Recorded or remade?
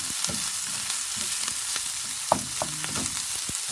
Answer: recorded